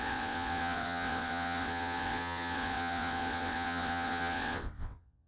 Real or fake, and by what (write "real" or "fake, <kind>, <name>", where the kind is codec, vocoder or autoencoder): fake, vocoder, WaveNeXt